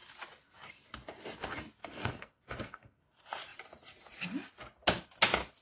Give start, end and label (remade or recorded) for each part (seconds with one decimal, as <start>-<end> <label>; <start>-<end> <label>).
0.0-1.8 recorded; 1.8-3.0 remade; 3.0-5.6 recorded